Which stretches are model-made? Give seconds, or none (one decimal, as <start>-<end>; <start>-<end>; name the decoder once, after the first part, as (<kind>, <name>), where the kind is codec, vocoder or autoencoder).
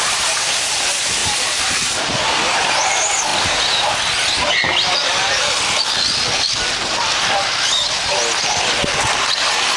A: 1.2-2.3 (vocoder, BigVGAN v2); 3.3-3.9